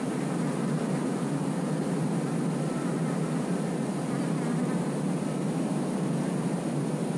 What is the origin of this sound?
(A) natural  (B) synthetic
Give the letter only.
A